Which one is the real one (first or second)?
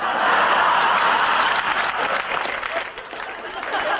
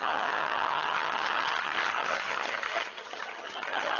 first